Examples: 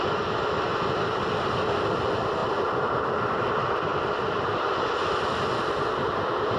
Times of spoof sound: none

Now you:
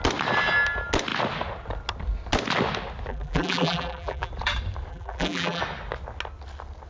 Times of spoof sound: 3.1-4.3 (vocoder, BigVGAN v2); 4.9-5.6